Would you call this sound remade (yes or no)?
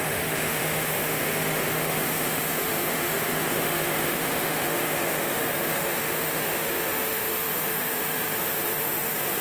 yes